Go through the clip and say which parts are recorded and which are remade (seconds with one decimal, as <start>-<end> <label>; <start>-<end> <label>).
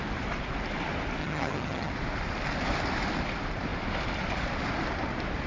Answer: 0.0-1.2 recorded; 1.2-1.9 remade; 1.9-5.5 recorded